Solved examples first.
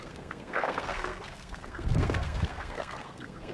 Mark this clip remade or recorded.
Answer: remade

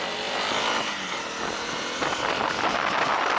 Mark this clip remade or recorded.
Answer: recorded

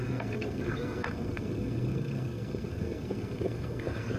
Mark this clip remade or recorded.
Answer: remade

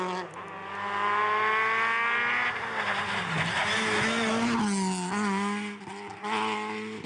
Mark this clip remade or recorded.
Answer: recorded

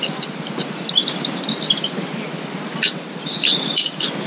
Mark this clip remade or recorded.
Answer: recorded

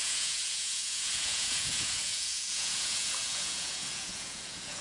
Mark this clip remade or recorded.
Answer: remade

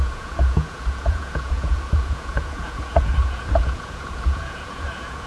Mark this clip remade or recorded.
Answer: remade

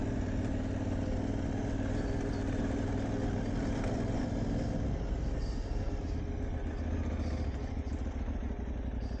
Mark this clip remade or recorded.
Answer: recorded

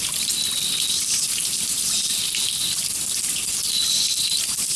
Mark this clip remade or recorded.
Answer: recorded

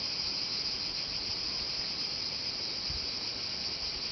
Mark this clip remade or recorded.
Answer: recorded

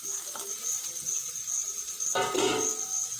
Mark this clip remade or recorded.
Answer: recorded